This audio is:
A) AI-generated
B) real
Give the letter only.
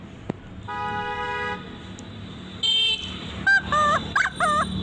B